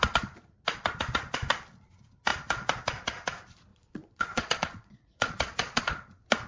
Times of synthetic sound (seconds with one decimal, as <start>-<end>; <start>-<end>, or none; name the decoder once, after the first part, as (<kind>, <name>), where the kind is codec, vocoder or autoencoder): 3.7-5.8 (vocoder, Vocos)